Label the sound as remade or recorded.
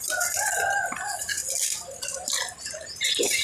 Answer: recorded